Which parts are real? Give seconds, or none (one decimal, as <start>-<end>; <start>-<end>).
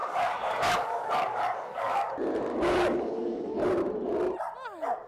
2.1-2.5; 3.7-5.1